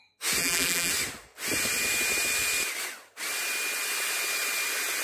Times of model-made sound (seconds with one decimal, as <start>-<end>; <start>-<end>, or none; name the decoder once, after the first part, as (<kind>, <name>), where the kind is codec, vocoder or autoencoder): 0.4-0.9 (vocoder, BigVGAN v2)